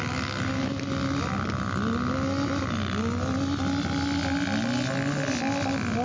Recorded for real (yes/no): yes